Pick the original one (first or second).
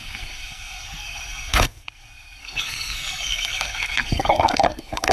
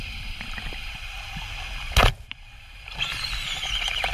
second